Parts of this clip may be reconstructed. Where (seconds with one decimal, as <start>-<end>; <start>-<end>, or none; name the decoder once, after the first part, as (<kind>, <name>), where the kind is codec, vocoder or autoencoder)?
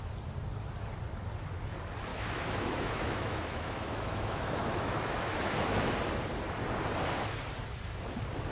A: 2.1-5.9 (autoencoder, DAC-VAE)